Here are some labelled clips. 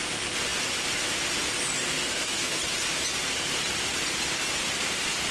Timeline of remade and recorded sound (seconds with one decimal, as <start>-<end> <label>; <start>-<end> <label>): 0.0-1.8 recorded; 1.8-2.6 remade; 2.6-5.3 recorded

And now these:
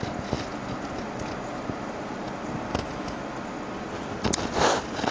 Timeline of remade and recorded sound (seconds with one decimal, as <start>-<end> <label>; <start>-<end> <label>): 0.0-2.7 recorded; 2.7-3.2 remade; 3.2-5.1 recorded

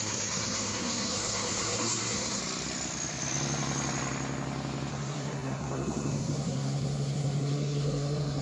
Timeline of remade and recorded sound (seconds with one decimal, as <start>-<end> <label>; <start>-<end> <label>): 0.0-2.4 remade; 2.4-4.9 recorded; 4.9-8.4 remade

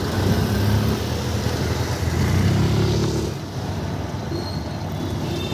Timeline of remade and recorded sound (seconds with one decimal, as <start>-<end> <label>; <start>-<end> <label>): 0.0-5.5 recorded

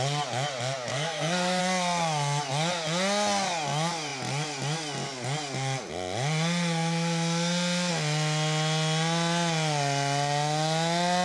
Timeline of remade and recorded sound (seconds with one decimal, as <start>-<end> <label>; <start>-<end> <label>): 0.0-0.9 recorded; 0.9-1.6 remade; 1.6-11.2 recorded

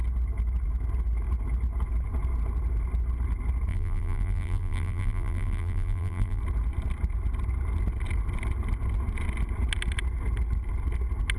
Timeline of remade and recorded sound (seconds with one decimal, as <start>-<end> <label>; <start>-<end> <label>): 0.0-3.7 recorded; 3.7-6.4 remade; 6.4-11.4 recorded

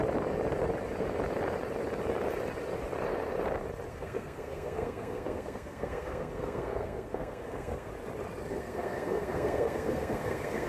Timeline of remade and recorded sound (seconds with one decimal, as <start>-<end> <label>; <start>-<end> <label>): 0.0-3.9 recorded; 3.9-7.9 remade; 7.9-8.5 recorded; 8.5-10.7 remade